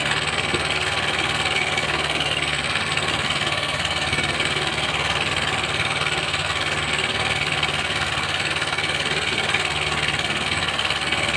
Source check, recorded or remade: remade